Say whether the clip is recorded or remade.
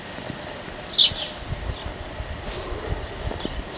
recorded